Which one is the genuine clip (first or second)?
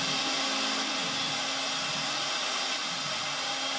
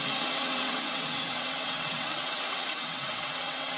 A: first